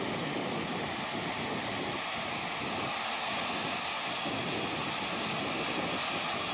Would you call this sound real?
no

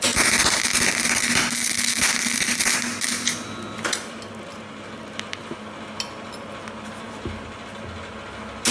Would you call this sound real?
yes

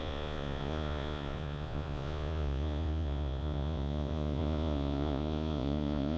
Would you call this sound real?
no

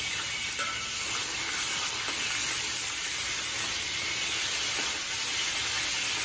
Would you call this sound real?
yes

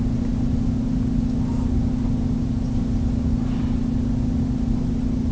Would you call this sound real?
yes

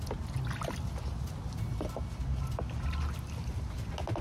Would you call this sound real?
yes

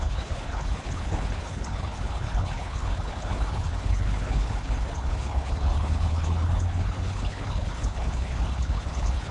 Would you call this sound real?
no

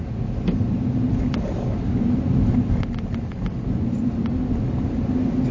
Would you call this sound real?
yes